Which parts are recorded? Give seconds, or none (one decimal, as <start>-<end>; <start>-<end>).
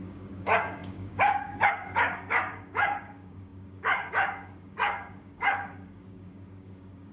none